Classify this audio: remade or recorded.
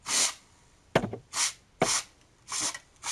recorded